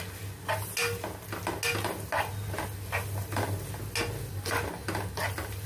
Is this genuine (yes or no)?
yes